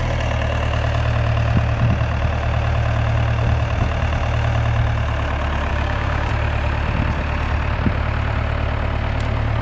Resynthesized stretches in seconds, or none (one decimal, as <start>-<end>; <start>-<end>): 5.7-6.3